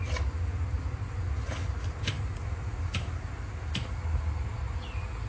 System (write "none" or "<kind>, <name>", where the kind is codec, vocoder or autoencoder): none